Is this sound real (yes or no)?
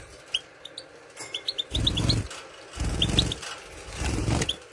yes